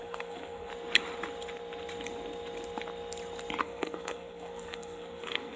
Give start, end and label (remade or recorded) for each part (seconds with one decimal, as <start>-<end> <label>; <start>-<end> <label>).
0.0-0.7 remade; 0.7-3.6 recorded; 3.6-5.6 remade